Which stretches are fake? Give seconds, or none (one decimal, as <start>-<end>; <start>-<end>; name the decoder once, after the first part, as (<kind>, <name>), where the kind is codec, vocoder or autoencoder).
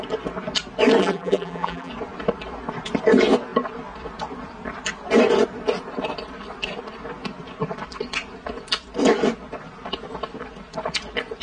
1.0-1.9 (vocoder, BigVGAN v2)